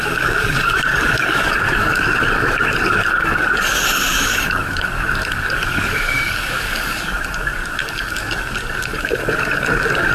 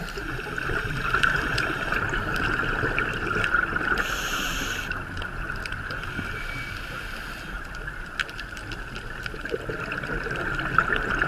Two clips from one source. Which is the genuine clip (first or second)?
second